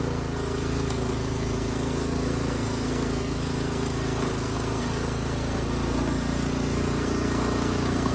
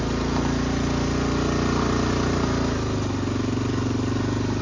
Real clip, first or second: second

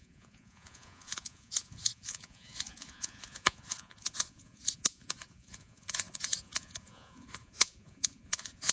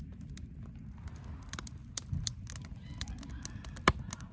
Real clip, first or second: second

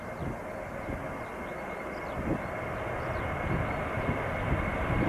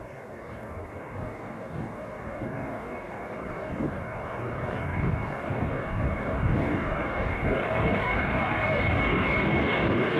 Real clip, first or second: first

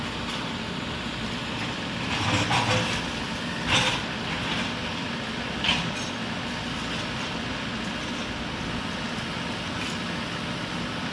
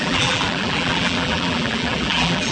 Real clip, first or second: first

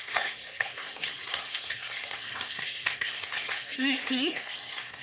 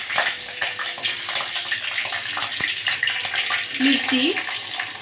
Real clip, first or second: second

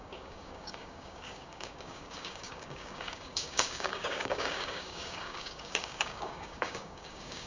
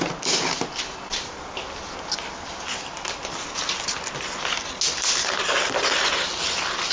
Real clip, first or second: second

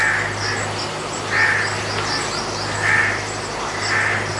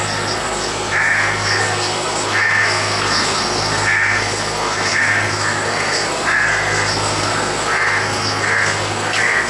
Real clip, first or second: first